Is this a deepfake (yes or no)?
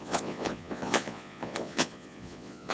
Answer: yes